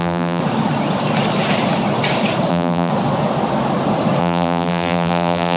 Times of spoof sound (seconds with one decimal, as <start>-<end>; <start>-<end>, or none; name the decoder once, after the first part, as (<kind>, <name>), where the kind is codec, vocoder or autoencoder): 0.0-0.4 (vocoder, BigVGAN v2); 2.5-2.9; 4.2-5.6